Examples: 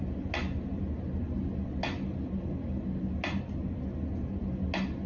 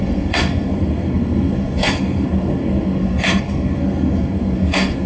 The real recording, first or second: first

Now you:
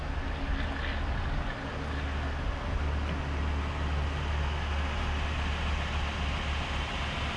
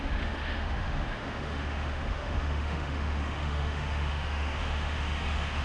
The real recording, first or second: first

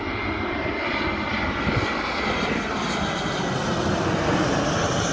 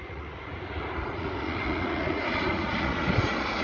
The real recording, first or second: first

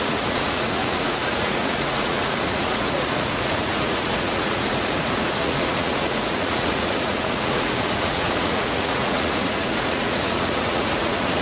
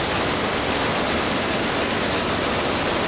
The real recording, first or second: second